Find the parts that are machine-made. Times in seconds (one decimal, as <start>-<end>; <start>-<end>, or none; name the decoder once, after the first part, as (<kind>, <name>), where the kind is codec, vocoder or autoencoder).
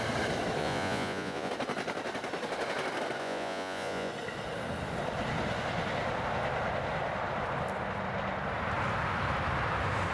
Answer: 0.6-1.5 (vocoder, Vocos); 3.2-4.1